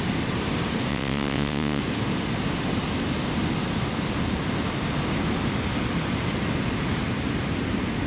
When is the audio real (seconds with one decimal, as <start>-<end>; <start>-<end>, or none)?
0.0-0.9; 1.8-8.1